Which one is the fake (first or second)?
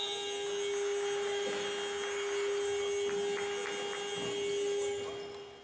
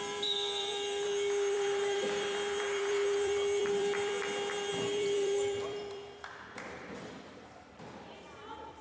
second